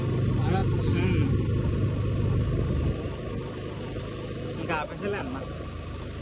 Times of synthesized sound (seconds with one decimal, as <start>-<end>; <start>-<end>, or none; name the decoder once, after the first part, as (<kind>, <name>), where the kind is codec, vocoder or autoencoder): none